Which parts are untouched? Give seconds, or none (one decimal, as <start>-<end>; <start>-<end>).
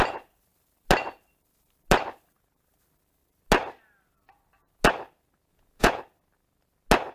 0.0-5.5; 6.0-7.1